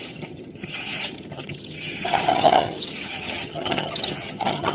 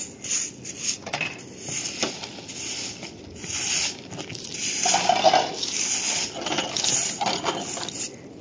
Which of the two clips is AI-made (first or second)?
first